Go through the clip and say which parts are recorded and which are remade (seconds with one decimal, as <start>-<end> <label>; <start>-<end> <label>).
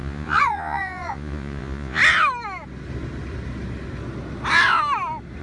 0.0-2.0 remade; 2.0-5.4 recorded